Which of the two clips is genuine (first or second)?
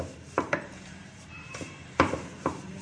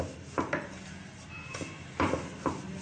second